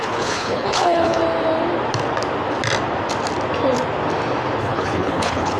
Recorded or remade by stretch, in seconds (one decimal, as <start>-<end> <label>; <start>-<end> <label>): 0.0-1.2 remade; 1.2-4.6 recorded; 4.6-5.6 remade